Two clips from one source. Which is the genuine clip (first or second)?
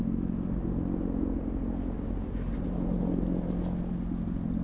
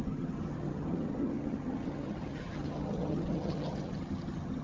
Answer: first